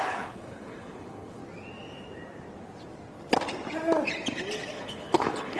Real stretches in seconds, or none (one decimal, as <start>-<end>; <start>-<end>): 1.4-4.7